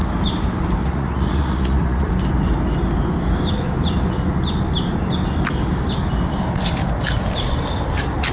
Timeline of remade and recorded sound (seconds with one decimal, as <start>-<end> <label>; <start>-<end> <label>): 0.0-0.8 recorded; 0.8-2.1 remade; 2.1-8.3 recorded